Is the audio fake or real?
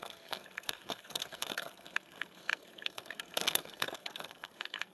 fake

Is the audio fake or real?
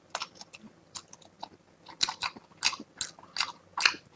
real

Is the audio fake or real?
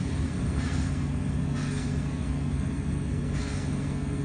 fake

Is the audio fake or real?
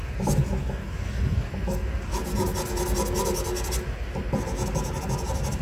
real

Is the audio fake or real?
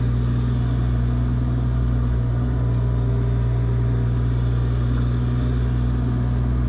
real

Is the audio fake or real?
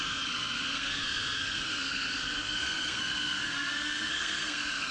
fake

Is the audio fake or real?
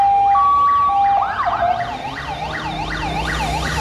real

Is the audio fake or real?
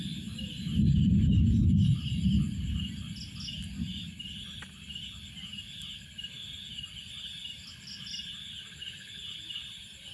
real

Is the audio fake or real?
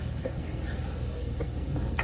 fake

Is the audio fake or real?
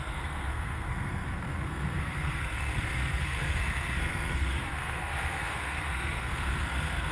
fake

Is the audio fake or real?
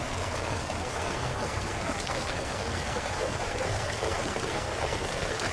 fake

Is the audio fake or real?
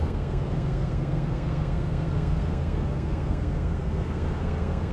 fake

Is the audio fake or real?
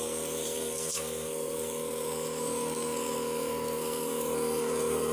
fake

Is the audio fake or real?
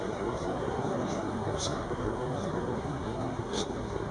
fake